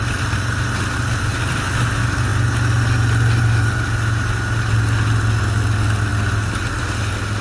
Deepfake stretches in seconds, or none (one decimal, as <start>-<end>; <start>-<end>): 1.3-1.8